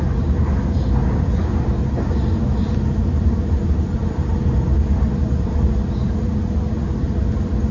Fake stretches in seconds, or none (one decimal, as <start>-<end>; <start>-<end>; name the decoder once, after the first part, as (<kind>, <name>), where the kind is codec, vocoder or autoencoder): none